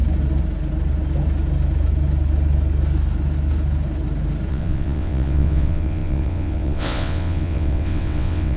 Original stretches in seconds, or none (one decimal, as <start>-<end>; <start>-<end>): 0.0-4.5